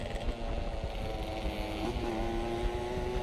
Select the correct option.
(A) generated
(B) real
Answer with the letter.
B